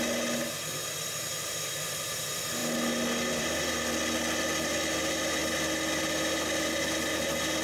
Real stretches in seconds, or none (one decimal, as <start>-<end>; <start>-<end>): 0.0-7.6